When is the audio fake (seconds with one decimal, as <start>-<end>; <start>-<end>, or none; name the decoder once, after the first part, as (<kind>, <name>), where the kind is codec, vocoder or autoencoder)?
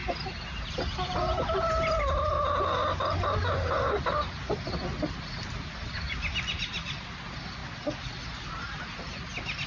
none